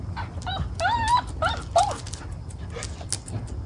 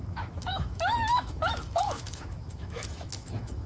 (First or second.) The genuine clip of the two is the first